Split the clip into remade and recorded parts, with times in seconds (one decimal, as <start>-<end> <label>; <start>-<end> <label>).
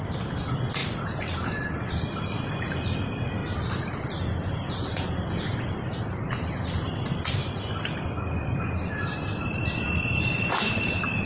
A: 0.0-0.8 remade; 0.8-1.9 recorded; 1.9-11.3 remade